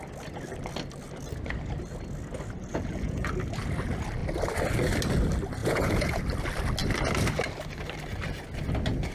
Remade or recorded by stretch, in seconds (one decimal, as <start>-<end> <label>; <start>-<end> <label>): 0.0-2.7 recorded; 2.7-3.3 remade; 3.3-5.6 recorded; 5.6-6.2 remade; 6.2-9.1 recorded